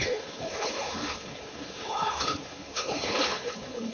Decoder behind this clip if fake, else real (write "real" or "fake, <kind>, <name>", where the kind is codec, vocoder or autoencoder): fake, codec, HILCodec